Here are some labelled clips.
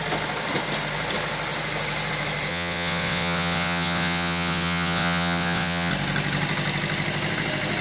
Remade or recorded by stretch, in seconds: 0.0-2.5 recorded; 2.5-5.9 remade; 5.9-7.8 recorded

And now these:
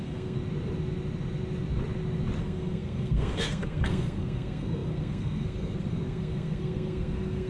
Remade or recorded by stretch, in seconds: 0.0-0.4 remade; 0.4-2.4 recorded; 2.4-7.5 remade

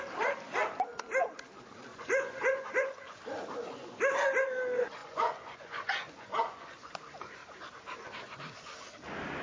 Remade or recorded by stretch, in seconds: 0.0-1.9 recorded; 1.9-3.2 remade; 3.2-5.0 recorded; 5.0-6.9 remade; 6.9-9.4 recorded

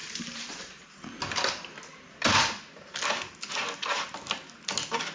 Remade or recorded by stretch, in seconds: 0.0-0.8 remade; 0.8-5.1 recorded

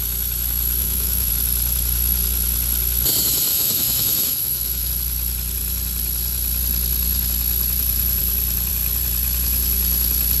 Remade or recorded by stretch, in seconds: 0.0-0.8 recorded; 0.8-1.3 remade; 1.3-3.5 recorded; 3.5-4.9 remade; 4.9-10.4 recorded

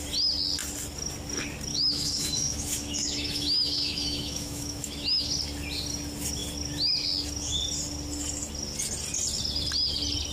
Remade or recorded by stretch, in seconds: 0.0-1.7 recorded; 1.7-5.3 remade; 5.3-10.3 recorded